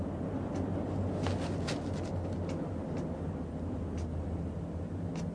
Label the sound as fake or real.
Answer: real